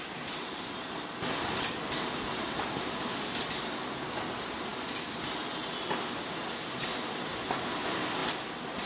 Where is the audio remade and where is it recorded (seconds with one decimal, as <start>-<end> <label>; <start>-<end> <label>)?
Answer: 0.0-8.9 recorded

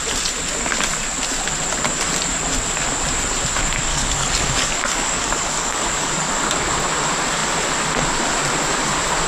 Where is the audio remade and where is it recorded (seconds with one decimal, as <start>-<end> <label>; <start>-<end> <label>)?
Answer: 0.0-3.9 recorded; 3.9-6.3 remade; 6.3-9.3 recorded

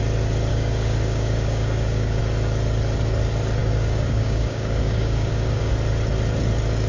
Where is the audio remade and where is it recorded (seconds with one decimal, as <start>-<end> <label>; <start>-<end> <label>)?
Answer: 0.0-0.5 recorded; 0.5-2.2 remade; 2.2-3.6 recorded; 3.6-5.7 remade; 5.7-6.9 recorded